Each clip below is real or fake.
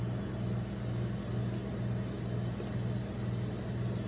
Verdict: real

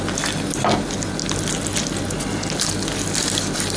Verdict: real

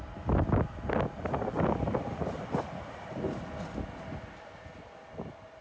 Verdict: real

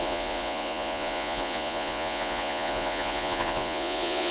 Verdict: fake